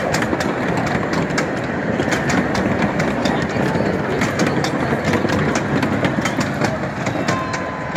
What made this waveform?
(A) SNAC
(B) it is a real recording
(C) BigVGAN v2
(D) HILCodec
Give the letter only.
B